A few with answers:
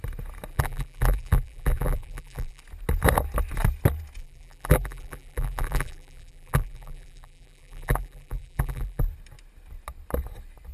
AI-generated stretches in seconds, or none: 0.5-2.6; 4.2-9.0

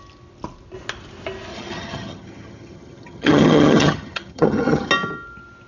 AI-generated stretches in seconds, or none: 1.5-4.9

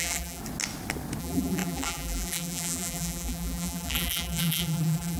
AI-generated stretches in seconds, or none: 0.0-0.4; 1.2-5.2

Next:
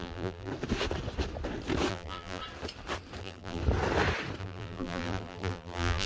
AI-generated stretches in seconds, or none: 0.0-0.5; 1.9-2.4; 3.2-3.6; 4.4-6.1

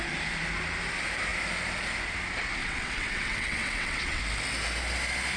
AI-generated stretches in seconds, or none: 2.6-4.2